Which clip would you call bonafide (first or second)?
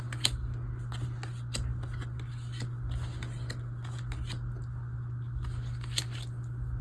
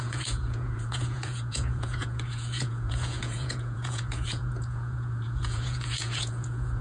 first